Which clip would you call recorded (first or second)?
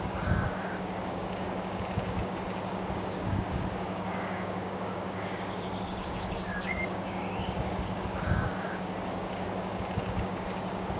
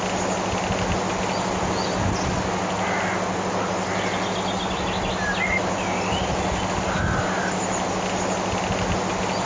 second